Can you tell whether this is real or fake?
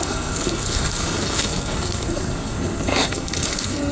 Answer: fake